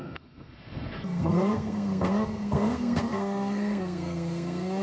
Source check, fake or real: fake